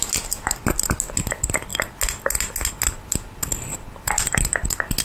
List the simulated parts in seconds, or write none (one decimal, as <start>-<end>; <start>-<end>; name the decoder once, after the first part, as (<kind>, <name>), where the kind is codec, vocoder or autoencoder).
none